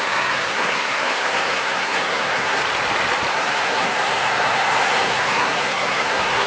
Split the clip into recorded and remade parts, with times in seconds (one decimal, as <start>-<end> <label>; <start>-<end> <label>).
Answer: 0.0-2.6 remade; 2.6-3.3 recorded; 3.3-6.5 remade